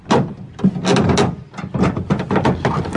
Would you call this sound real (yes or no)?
yes